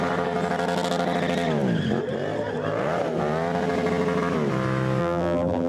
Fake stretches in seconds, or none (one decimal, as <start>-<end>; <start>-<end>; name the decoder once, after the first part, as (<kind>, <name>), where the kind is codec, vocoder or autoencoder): 5.0-5.7 (vocoder, BigVGAN v2)

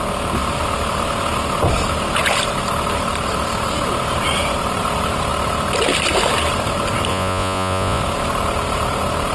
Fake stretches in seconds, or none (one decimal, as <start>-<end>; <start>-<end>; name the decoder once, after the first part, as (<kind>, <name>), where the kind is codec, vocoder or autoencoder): 7.1-8.0 (vocoder, Vocos)

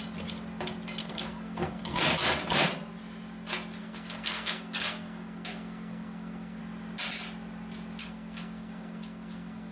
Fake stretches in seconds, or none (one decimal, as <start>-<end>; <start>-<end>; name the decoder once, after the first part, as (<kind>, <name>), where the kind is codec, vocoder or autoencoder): 1.0-2.0 (codec, SNAC); 3.8-6.6; 8.0-9.7

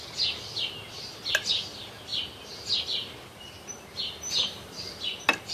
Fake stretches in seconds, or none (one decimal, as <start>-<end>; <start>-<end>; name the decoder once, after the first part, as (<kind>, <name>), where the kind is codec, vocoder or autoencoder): none

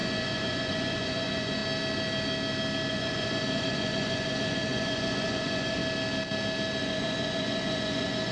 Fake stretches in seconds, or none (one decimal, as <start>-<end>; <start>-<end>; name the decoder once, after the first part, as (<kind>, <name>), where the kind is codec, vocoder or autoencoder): 0.0-1.6 (vocoder, Vocos); 2.9-5.8; 6.8-8.3

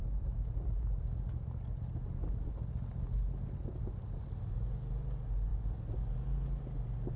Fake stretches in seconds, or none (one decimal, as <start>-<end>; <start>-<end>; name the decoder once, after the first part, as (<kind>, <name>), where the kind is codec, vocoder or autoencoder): none